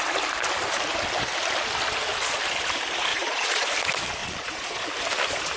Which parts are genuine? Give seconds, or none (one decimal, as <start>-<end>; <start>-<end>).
0.0-3.1; 3.7-4.2; 4.8-5.6